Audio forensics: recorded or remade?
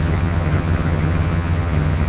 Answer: remade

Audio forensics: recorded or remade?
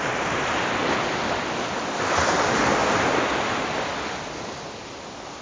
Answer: recorded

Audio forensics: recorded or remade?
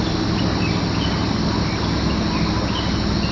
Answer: recorded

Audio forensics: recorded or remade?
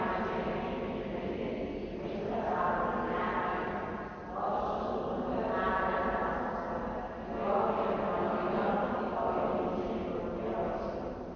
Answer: recorded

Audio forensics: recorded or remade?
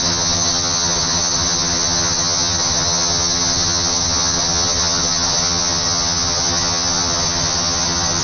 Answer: remade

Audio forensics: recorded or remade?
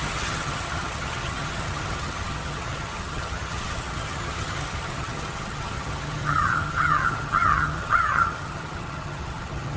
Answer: remade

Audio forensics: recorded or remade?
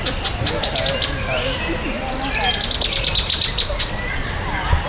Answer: recorded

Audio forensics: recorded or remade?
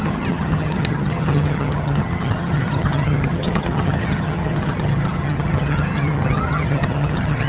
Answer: remade